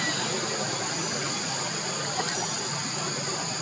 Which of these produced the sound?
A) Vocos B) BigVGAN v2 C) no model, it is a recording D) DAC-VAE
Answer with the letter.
C